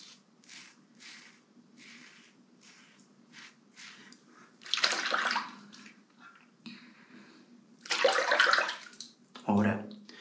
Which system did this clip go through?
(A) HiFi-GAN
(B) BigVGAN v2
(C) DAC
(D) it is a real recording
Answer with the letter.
B